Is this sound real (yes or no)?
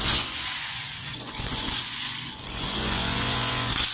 no